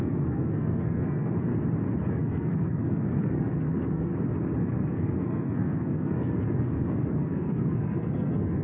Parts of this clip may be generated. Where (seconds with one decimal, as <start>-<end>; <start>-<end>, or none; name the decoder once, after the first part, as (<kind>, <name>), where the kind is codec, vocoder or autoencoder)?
0.0-1.5 (codec, SNAC); 2.1-4.1; 4.6-8.6